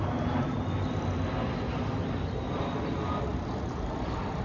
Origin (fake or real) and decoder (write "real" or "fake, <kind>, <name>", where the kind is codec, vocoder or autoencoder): real